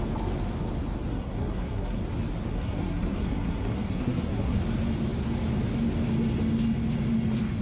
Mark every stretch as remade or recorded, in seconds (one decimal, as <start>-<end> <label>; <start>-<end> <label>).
0.0-1.1 recorded; 1.1-2.0 remade; 2.0-2.5 recorded; 2.5-4.6 remade; 4.6-7.6 recorded